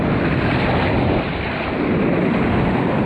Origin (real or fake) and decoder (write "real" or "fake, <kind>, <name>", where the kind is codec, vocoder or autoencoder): real